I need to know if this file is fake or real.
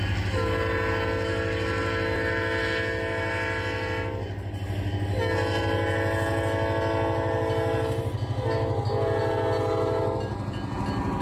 real